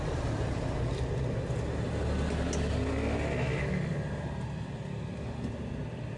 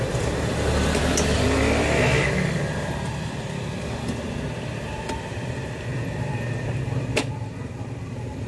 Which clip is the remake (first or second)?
second